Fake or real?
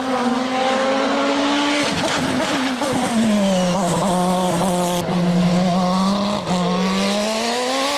real